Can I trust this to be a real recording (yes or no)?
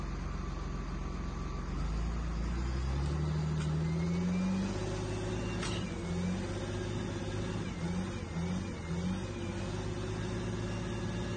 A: yes